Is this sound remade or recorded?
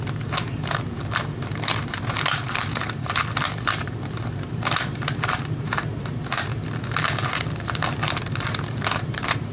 remade